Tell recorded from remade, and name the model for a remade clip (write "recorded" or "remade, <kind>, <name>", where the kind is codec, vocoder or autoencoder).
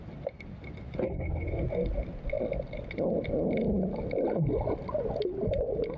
recorded